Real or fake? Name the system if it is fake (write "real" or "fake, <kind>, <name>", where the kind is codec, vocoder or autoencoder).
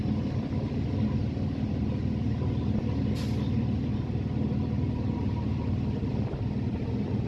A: real